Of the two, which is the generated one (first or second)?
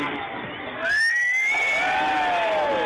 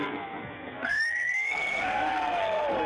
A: second